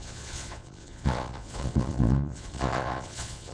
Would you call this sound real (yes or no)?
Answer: no